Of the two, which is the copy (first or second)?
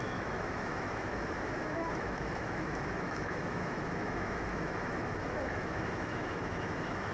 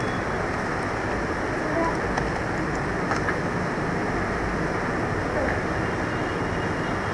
first